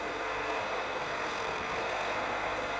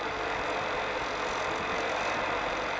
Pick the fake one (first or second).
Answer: first